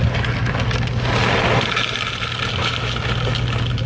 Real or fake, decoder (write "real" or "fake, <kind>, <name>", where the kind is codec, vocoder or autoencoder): real